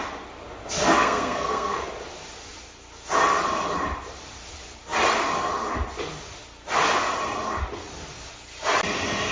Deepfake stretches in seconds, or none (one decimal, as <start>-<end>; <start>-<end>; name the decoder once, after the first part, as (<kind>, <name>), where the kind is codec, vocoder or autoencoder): 1.0-1.9 (codec, SNAC)